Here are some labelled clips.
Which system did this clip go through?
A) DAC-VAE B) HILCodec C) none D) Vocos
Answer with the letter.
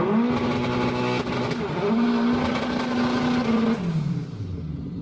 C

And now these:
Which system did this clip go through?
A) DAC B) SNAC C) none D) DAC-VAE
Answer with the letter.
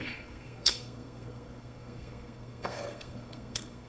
B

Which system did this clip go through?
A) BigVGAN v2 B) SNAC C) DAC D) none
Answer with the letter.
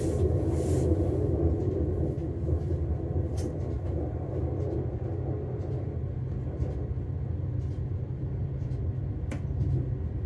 D